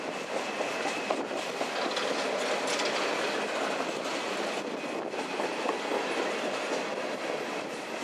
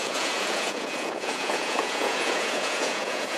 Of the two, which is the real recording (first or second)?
first